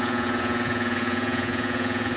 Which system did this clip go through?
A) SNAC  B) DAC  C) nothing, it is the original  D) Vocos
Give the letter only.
D